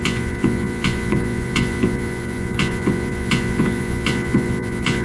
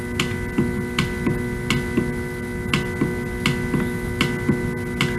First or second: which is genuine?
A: second